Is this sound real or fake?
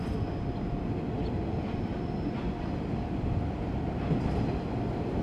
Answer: real